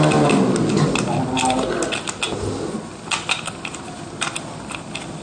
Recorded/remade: recorded